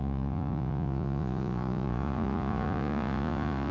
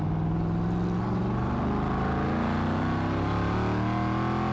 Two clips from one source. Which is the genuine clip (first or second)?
second